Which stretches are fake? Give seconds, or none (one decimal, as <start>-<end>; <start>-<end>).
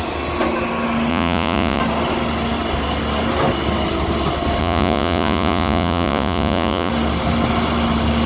1.1-1.8; 4.6-6.9